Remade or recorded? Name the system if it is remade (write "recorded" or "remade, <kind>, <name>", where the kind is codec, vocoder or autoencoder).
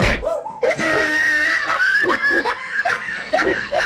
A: remade, codec, SNAC